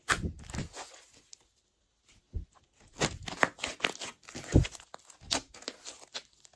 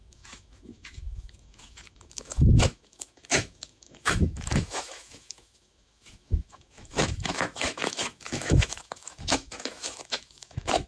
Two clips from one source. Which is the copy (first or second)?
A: second